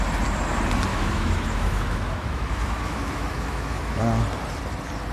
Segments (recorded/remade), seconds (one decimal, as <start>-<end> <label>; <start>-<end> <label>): 0.0-0.9 recorded; 0.9-4.0 remade; 4.0-5.1 recorded